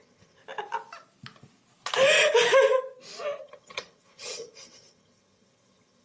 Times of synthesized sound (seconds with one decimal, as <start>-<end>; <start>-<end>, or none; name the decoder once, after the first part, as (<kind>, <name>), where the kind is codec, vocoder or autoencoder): 0.0-0.4 (vocoder, HiFi-GAN); 3.4-6.0